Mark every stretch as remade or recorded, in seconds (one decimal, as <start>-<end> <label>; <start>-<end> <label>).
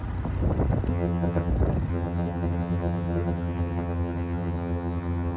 0.0-0.9 recorded; 0.9-1.5 remade; 1.5-1.9 recorded; 1.9-5.4 remade